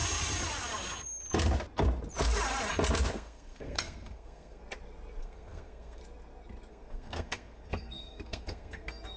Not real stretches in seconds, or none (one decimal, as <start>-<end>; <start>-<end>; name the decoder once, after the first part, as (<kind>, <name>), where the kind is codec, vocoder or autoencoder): 3.1-4.6 (codec, SNAC); 5.2-6.0; 6.7-9.2